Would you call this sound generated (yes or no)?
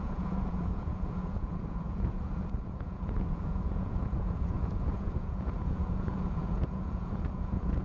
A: yes